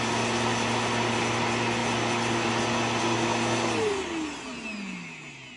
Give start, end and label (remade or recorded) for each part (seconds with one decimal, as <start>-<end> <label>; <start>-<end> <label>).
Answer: 0.0-5.6 recorded